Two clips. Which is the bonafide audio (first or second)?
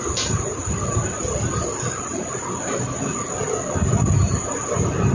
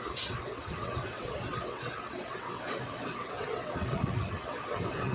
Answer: first